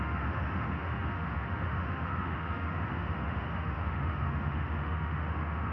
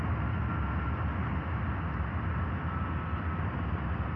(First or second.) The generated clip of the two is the first